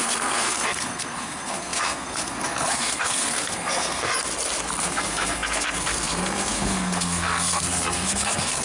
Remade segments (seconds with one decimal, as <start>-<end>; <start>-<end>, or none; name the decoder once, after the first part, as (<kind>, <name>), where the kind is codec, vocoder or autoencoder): 0.0-4.1 (codec, SNAC); 4.8-8.6